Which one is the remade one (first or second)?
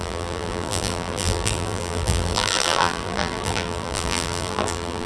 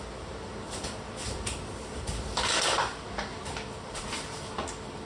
first